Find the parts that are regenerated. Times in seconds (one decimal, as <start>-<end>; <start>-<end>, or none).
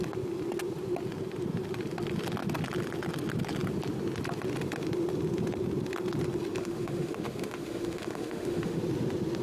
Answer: 6.6-8.8